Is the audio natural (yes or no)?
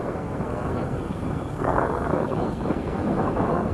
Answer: no